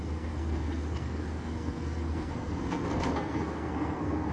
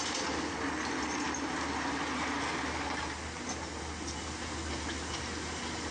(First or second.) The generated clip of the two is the first